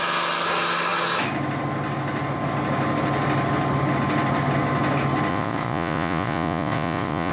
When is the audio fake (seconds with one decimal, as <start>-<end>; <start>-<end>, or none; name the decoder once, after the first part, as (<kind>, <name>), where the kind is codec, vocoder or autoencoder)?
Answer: 5.3-7.3 (vocoder, Vocos)